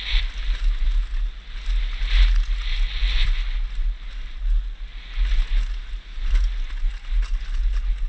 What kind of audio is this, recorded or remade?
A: recorded